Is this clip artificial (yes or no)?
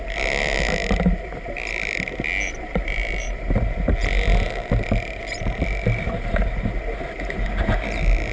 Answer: no